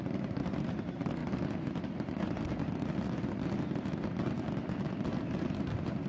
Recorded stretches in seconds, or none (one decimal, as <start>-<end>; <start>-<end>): 1.2-4.9